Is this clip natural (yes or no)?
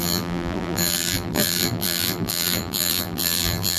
no